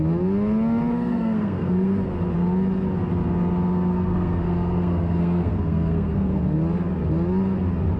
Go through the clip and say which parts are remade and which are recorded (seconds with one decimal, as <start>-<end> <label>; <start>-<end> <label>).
0.0-0.9 recorded; 0.9-2.0 remade; 2.0-3.9 recorded; 3.9-6.4 remade; 6.4-8.0 recorded